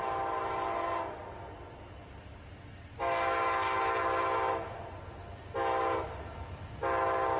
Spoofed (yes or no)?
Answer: no